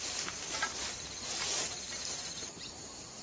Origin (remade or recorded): recorded